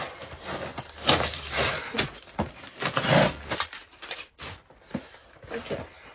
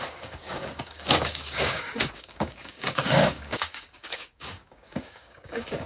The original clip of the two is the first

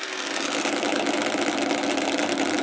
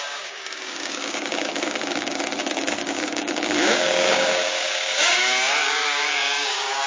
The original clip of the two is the first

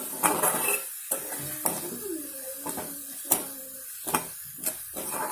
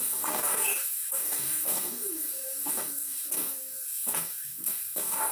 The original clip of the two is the first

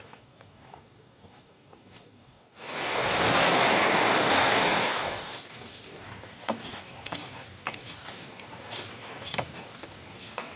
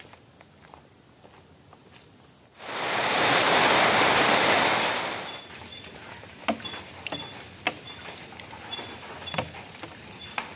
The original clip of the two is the second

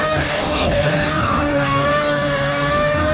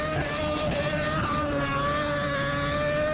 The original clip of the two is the second